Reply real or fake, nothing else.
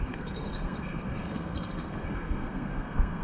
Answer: fake